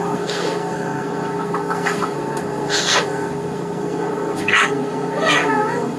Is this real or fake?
fake